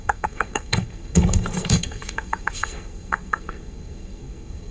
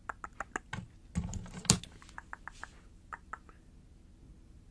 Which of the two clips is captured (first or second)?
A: second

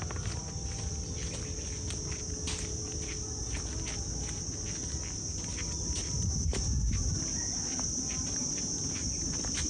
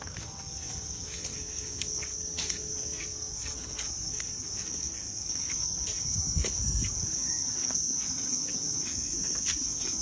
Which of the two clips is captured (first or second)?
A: first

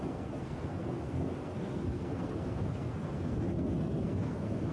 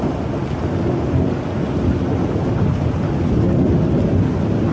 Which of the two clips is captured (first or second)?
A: second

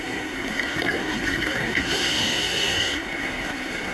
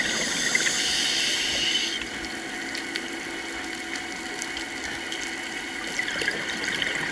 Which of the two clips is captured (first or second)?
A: second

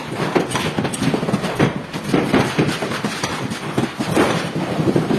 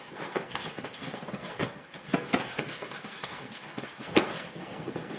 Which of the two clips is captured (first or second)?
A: first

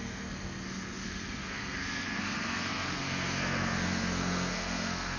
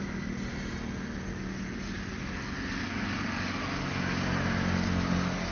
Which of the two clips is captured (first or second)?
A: second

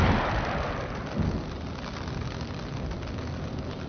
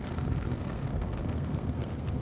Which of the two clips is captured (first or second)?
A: first